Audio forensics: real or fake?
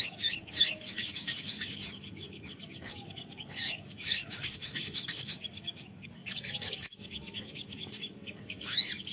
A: fake